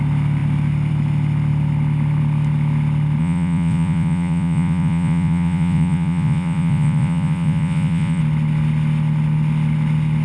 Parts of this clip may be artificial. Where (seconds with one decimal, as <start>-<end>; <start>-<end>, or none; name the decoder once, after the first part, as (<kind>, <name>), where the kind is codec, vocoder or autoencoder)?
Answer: 3.2-8.2 (vocoder, Vocos)